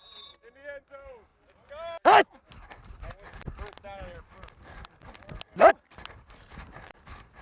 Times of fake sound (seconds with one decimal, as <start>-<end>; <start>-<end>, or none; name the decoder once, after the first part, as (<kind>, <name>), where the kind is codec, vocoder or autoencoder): none